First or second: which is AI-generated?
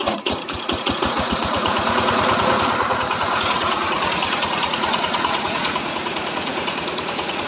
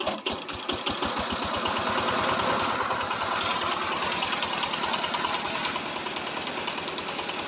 first